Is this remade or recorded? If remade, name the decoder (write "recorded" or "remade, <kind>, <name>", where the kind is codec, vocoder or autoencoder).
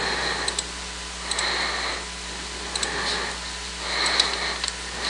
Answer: recorded